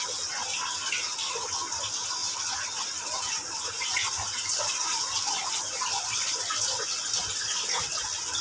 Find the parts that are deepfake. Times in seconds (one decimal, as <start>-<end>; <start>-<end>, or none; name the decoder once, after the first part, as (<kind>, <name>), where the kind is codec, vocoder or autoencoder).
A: 2.2-6.4 (vocoder, BigVGAN v2)